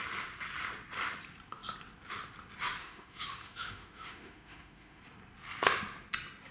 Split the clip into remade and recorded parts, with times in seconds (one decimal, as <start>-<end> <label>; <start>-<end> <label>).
0.0-2.8 recorded; 2.8-5.0 remade; 5.0-6.5 recorded